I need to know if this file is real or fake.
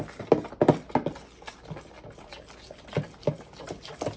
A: real